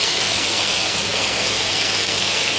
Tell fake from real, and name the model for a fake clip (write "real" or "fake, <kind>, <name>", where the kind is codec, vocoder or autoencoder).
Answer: fake, codec, SNAC